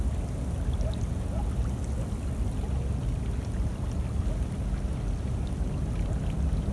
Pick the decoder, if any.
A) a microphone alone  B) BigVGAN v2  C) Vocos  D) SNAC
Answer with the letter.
A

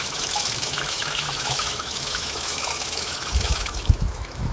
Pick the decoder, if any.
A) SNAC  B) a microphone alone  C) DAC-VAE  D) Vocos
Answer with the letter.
C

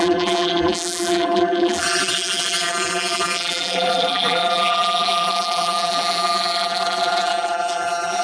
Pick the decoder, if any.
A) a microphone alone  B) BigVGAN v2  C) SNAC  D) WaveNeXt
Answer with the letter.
B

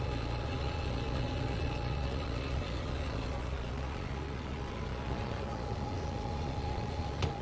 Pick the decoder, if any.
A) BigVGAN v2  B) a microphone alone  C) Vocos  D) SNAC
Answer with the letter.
C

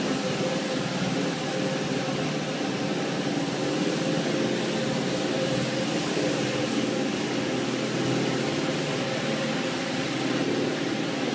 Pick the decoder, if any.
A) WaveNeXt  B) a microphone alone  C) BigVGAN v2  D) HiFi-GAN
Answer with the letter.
B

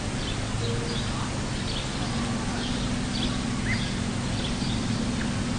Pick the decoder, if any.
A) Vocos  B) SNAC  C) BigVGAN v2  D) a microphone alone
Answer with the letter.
D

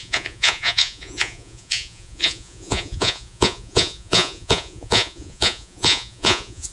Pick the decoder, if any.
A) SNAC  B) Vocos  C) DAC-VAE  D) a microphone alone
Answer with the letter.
B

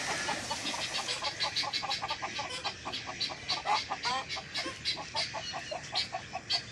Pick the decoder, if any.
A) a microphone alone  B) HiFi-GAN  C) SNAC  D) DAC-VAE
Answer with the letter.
A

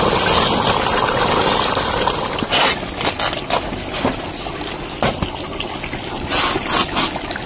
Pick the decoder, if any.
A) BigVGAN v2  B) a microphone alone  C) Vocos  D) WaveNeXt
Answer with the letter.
B